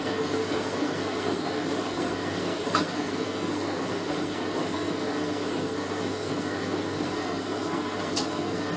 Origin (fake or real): fake